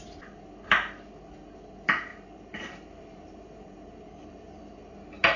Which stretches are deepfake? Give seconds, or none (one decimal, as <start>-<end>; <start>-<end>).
2.1-4.6